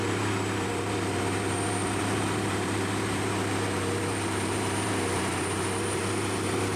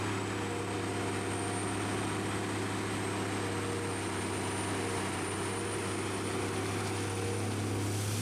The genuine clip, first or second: second